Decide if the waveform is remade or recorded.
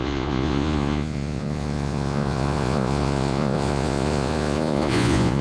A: remade